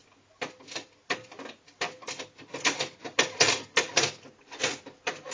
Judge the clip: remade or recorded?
recorded